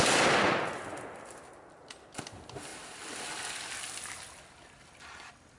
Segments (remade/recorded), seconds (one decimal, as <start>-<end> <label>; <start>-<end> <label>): 0.0-5.6 recorded